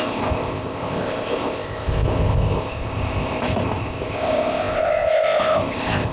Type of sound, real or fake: fake